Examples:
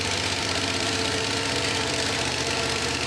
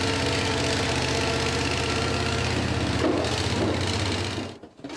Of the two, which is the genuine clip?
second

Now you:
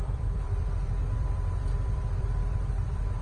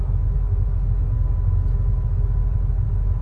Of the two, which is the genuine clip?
second